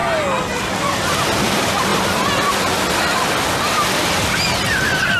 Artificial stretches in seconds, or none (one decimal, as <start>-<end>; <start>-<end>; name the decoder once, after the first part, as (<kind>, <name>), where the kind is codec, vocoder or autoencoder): none